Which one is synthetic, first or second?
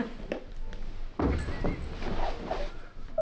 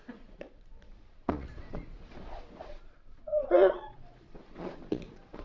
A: second